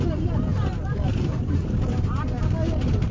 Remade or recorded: recorded